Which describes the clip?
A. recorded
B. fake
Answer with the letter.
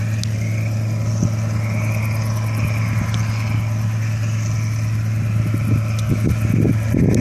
A